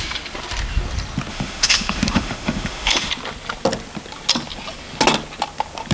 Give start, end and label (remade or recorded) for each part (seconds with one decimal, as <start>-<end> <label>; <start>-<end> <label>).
0.0-1.3 recorded; 1.3-3.1 remade; 3.1-5.9 recorded